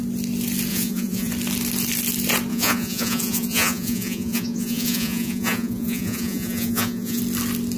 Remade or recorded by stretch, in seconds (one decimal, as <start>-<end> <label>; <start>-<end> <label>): 0.0-0.7 recorded; 0.7-1.3 remade; 1.3-2.5 recorded; 2.5-7.2 remade; 7.2-7.8 recorded